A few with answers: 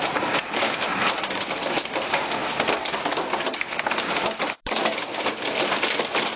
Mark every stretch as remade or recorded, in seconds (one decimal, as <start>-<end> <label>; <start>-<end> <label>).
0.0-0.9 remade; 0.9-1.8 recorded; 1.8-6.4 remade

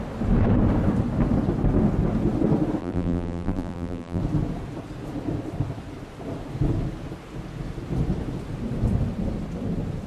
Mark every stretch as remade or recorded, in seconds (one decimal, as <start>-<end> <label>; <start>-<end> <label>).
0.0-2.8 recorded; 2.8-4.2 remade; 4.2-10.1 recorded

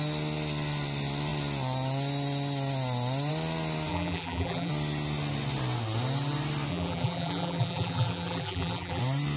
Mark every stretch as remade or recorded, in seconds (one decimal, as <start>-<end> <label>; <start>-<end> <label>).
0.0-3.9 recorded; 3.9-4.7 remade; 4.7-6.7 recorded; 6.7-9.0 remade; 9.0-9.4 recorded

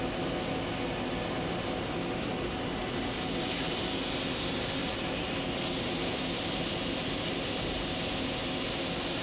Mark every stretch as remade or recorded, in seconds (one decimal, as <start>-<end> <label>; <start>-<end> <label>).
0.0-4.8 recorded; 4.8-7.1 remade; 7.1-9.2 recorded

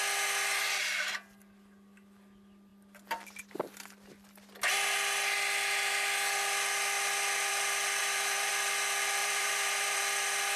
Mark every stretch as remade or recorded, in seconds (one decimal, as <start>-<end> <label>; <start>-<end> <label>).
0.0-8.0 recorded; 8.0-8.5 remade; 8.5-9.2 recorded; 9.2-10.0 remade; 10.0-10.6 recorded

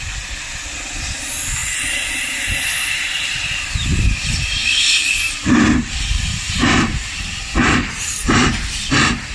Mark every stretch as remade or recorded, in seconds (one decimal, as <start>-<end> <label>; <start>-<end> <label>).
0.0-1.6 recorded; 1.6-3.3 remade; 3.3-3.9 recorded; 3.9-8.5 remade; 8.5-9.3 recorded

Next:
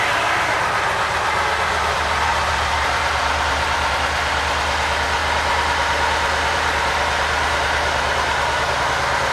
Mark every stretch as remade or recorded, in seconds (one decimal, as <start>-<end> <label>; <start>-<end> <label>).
0.0-2.3 recorded; 2.3-3.9 remade; 3.9-5.2 recorded; 5.2-8.8 remade; 8.8-9.3 recorded

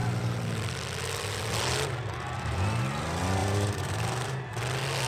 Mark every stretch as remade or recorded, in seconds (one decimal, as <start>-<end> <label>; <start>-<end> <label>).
0.0-3.4 recorded; 3.4-4.6 remade; 4.6-5.1 recorded